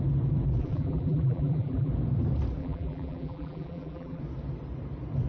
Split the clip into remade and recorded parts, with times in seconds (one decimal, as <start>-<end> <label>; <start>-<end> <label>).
0.0-0.6 recorded; 0.6-1.9 remade; 1.9-2.6 recorded; 2.6-4.2 remade; 4.2-5.3 recorded